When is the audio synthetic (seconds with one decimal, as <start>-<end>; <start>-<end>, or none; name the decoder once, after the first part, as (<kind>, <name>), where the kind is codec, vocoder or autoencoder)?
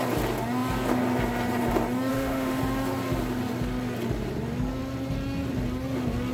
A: 2.1-2.6 (autoencoder, DAC-VAE)